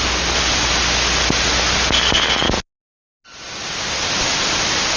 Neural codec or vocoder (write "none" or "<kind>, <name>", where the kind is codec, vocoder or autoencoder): none